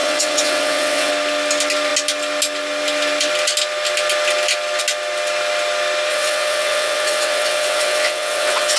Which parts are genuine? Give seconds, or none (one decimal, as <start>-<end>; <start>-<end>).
1.1-6.1